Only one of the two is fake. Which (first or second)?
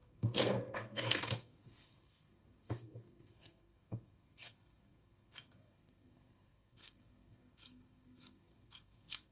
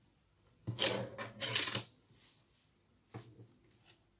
first